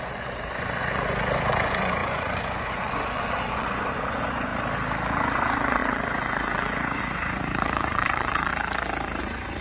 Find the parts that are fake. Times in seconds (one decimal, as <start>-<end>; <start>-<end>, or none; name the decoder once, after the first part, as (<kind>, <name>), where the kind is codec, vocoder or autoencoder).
0.0-4.5 (vocoder, Vocos); 5.1-8.5; 9.2-9.6